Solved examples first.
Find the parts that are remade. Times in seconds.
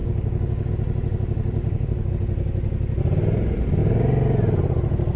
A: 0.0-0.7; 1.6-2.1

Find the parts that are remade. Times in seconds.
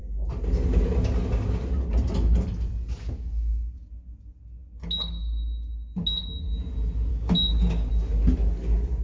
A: 7.1-7.9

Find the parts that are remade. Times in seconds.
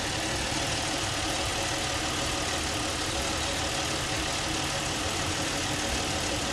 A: none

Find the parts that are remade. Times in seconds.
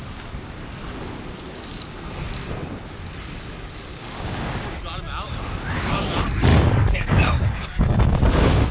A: 3.9-4.8; 6.5-8.7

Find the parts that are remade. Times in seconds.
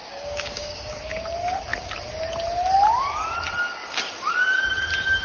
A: 0.0-1.2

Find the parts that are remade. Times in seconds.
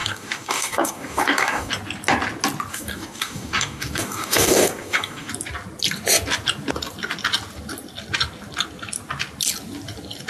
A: 0.0-1.7; 2.7-5.3